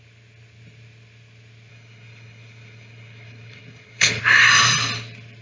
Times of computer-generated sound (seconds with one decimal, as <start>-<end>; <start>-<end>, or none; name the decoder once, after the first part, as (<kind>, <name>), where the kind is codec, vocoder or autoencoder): 1.7-4.2 (codec, HILCodec)